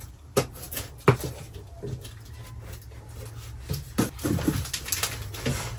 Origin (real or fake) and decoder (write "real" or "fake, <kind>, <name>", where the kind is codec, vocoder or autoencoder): real